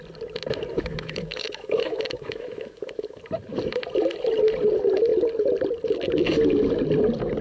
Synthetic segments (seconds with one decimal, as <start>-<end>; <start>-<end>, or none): 0.7-3.2